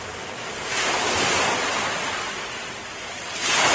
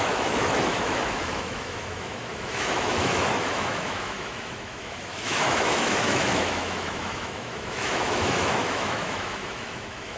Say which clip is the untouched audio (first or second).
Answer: first